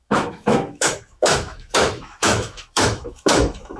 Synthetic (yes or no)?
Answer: yes